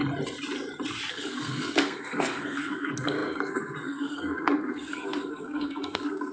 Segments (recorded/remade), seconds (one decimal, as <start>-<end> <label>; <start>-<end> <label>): 0.0-1.1 recorded; 1.1-6.3 remade